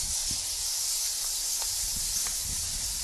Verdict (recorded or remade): recorded